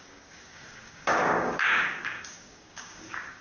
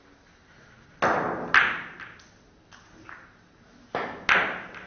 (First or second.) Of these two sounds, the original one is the second